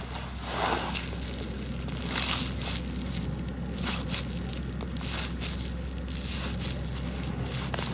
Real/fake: real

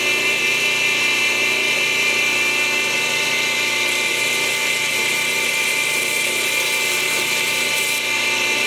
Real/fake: fake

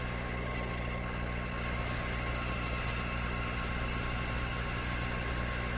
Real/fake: real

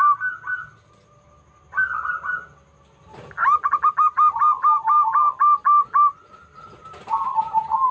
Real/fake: real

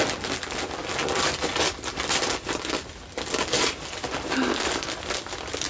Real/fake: real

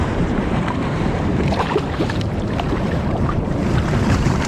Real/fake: fake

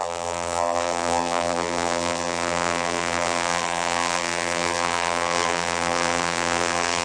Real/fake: fake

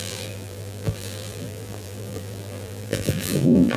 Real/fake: fake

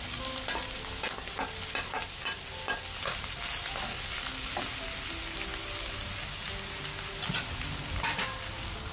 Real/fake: real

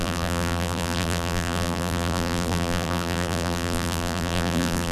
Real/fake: fake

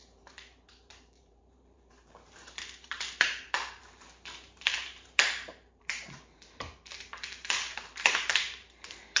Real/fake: fake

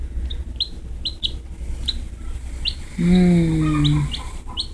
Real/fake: real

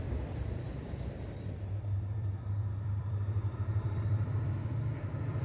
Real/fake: fake